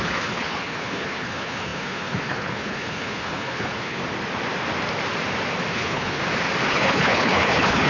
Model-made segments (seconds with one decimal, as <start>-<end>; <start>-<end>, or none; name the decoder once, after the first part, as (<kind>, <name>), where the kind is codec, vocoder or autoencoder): 0.0-4.0 (codec, HILCodec); 5.7-6.2; 6.7-7.9